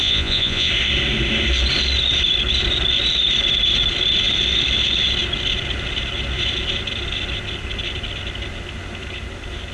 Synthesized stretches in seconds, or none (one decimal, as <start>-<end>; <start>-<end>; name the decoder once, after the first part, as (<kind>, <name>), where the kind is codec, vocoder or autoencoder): 0.0-0.7 (vocoder, Vocos)